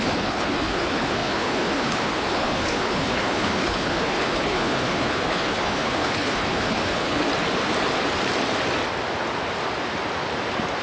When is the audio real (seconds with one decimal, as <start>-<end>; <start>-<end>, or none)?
7.3-10.8